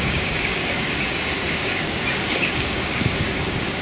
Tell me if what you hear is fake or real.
fake